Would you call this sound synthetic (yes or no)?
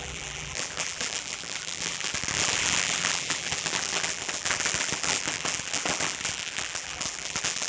yes